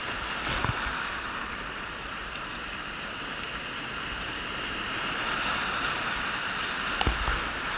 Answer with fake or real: real